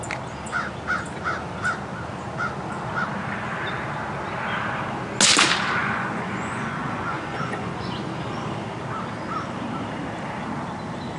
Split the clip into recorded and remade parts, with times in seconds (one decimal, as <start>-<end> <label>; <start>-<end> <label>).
0.0-5.8 recorded; 5.8-8.1 remade; 8.1-11.2 recorded